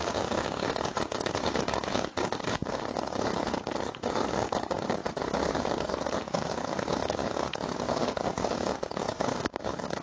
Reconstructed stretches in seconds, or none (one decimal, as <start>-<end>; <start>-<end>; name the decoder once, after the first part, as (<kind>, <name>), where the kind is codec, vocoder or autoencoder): 0.0-10.0 (codec, DAC)